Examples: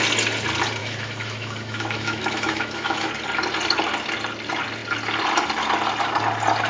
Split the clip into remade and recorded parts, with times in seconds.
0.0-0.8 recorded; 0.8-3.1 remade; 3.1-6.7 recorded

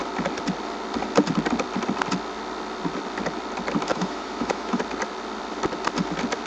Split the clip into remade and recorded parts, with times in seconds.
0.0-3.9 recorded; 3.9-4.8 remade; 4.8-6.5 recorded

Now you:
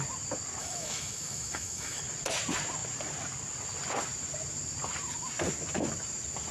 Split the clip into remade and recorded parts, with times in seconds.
0.0-0.6 recorded; 0.6-2.0 remade; 2.0-6.5 recorded

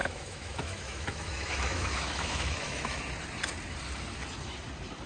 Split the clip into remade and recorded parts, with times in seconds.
0.0-3.0 remade; 3.0-5.1 recorded

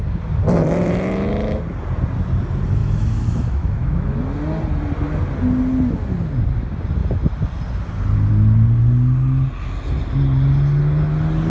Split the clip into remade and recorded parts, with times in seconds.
0.0-2.8 recorded; 2.8-4.2 remade; 4.2-11.5 recorded